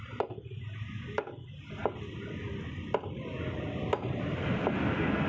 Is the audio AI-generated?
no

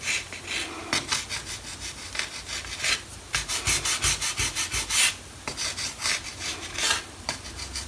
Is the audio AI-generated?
no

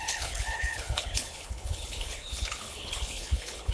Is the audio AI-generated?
yes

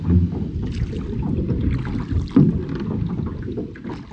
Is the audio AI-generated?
no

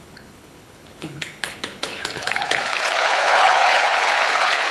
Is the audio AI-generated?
yes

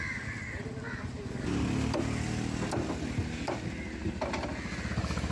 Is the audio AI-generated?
no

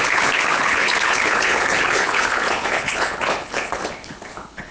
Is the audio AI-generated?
yes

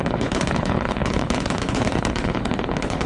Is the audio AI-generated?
yes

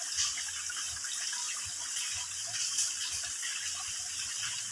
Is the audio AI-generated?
no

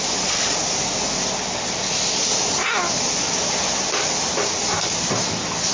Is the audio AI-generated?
no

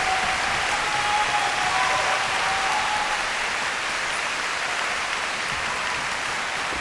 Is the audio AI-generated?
no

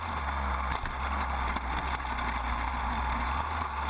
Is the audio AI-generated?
no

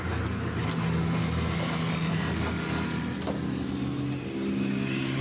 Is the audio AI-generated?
no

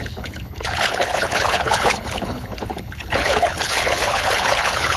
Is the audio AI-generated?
yes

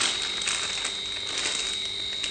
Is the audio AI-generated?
no